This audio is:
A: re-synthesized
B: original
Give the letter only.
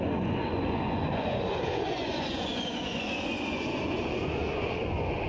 A